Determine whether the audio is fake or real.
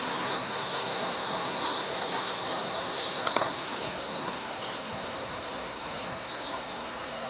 fake